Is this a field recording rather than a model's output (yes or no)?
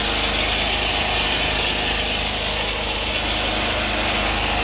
yes